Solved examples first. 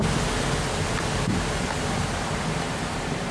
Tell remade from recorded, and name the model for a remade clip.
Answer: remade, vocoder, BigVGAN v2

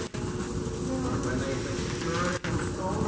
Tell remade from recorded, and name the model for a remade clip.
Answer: recorded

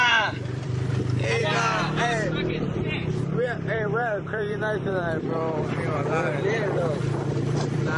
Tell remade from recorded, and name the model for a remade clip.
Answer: remade, vocoder, BigVGAN v2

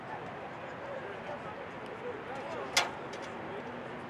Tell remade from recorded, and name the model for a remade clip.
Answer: recorded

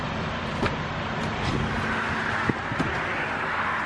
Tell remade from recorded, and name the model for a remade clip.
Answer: recorded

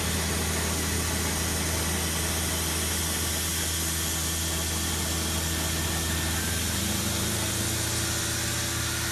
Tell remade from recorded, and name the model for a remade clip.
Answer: recorded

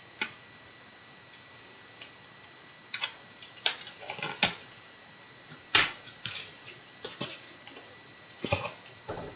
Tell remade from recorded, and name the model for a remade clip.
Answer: remade, vocoder, BigVGAN v2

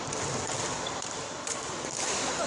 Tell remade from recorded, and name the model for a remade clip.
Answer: remade, vocoder, BigVGAN v2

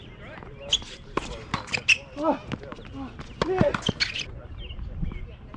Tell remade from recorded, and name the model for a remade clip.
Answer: recorded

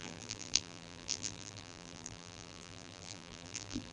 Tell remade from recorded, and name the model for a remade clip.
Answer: remade, vocoder, BigVGAN v2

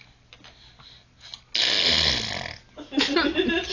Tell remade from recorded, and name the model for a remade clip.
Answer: recorded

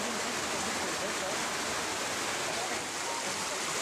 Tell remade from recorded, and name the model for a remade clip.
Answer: recorded